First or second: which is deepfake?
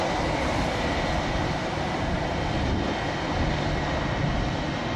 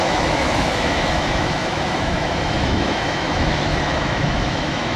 second